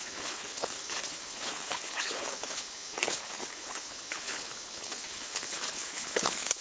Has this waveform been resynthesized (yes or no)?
yes